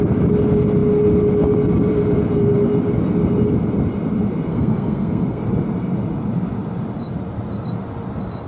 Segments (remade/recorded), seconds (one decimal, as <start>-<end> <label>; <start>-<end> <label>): 0.0-4.5 recorded; 4.5-5.4 remade; 5.4-8.5 recorded